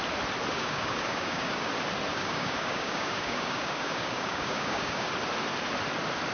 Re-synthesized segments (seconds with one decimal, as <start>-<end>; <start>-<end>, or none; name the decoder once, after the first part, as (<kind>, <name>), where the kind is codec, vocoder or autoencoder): 0.5-1.7 (codec, DAC); 2.1-5.1